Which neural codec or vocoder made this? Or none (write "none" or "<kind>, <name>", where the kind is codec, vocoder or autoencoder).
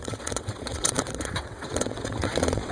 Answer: vocoder, WaveNeXt